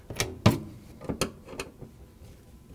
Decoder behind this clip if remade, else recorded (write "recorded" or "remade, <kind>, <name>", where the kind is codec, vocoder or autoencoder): recorded